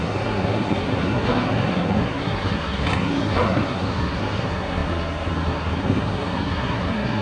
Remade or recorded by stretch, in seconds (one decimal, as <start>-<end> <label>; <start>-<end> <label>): 0.0-7.2 remade